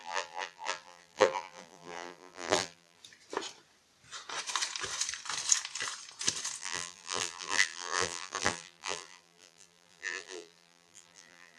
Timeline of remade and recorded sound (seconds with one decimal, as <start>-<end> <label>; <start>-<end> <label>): 0.0-3.0 remade; 3.0-6.6 recorded; 6.6-11.6 remade